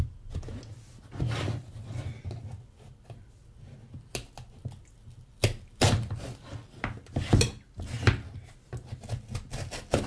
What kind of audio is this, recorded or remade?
recorded